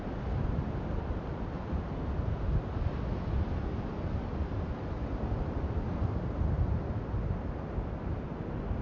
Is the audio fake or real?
real